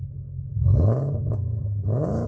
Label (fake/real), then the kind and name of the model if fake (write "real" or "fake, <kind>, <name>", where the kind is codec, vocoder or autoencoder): real